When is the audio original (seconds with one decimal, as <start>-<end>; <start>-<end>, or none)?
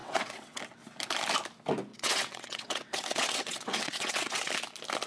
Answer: 0.6-1.9; 4.5-5.1